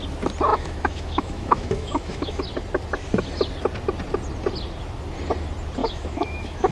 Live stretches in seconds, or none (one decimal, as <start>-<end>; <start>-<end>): 0.0-0.5; 2.4-5.8